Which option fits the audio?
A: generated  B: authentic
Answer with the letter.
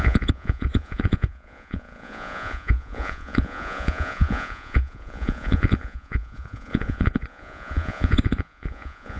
A